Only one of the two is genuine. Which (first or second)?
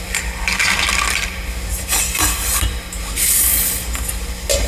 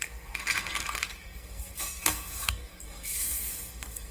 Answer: first